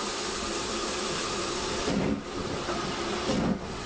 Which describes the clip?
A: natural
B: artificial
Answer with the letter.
A